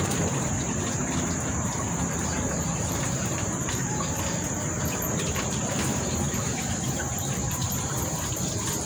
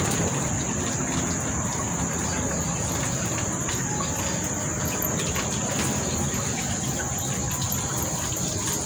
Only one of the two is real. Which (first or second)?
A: second